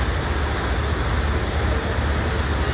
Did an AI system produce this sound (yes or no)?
no